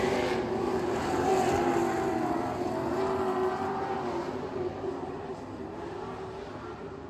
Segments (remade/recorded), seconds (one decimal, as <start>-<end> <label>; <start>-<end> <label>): 0.0-1.3 remade; 1.3-2.9 recorded; 2.9-7.1 remade